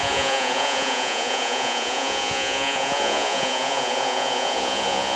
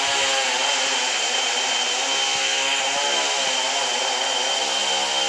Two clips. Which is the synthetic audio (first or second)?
first